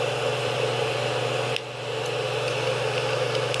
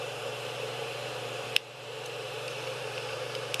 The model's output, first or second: second